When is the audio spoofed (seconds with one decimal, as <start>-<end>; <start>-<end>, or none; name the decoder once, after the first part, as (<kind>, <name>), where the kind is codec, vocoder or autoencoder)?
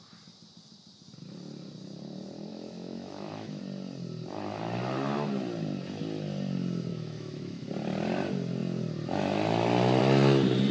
2.5-3.6 (autoencoder, DAC-VAE); 6.9-7.7